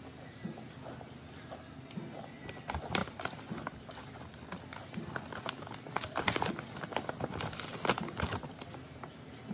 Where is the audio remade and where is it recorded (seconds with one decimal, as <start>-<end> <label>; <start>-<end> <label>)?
0.0-9.5 recorded